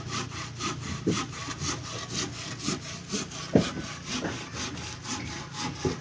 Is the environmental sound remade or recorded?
recorded